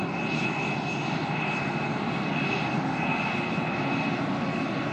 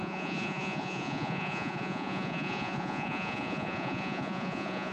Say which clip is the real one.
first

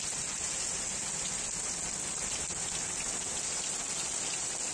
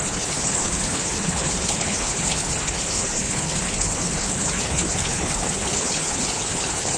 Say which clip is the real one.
first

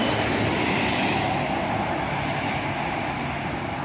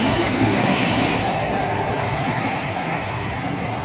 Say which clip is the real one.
first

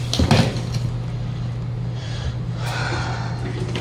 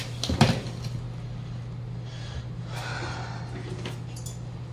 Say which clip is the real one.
second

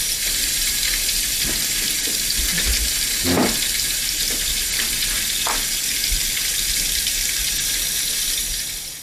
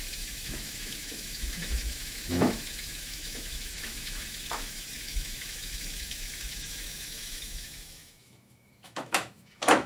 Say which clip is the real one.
first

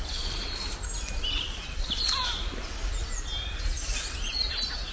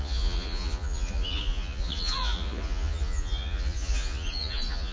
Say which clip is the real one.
first